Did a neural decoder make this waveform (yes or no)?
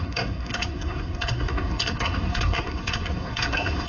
yes